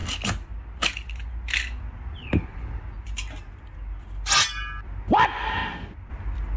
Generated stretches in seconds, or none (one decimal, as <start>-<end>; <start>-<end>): 2.2-2.8